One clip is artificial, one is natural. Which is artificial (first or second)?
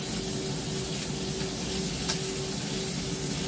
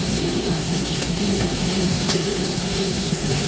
second